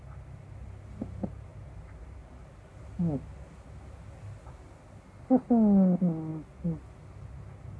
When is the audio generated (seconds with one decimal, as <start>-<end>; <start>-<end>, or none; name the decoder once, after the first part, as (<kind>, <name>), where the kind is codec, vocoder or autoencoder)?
none